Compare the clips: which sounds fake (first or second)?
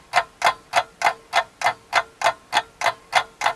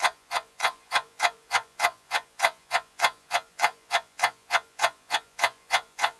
second